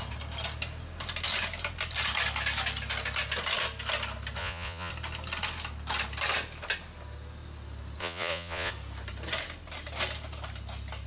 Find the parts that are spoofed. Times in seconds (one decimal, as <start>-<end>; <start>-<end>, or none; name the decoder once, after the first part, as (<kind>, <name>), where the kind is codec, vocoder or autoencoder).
4.4-4.9 (vocoder, Vocos); 8.0-8.7